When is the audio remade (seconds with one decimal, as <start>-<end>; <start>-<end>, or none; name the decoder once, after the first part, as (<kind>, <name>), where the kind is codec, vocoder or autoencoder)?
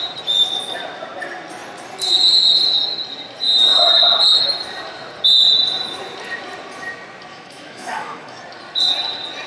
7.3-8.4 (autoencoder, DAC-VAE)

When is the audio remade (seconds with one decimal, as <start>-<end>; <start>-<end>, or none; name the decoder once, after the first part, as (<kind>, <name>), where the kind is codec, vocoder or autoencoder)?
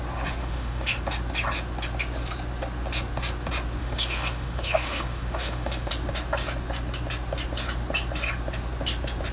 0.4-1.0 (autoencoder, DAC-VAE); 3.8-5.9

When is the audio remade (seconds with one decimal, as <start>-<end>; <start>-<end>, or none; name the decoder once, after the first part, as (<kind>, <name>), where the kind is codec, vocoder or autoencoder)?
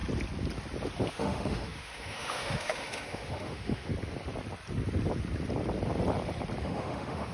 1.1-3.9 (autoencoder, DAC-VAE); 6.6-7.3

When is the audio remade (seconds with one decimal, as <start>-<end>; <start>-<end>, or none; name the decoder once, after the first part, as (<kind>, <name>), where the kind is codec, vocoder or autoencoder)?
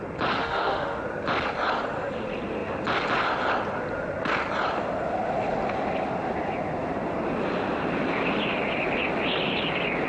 0.4-1.0 (autoencoder, DAC-VAE)